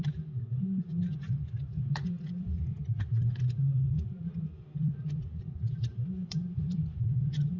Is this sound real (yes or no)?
no